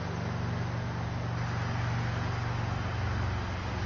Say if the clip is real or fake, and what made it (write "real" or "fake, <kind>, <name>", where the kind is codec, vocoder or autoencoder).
real